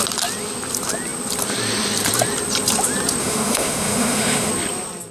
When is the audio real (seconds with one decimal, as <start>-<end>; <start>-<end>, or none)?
0.0-3.2; 4.5-5.1